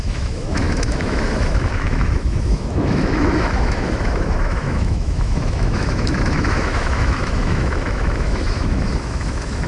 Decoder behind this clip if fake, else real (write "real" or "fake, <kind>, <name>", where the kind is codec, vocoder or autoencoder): fake, autoencoder, DAC-VAE